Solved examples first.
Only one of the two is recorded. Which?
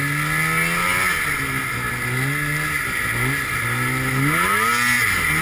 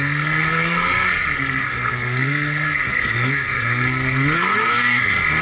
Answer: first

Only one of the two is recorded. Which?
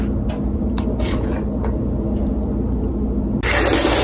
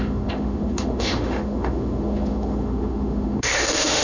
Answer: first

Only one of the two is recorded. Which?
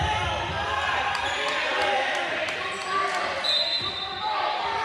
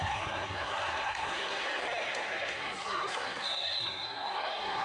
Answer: first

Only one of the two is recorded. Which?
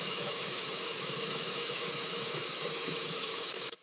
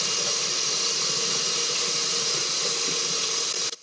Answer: second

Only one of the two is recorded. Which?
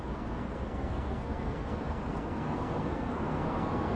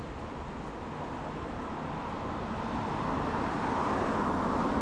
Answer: second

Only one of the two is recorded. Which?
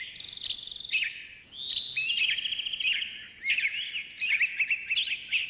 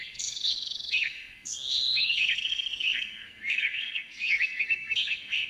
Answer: first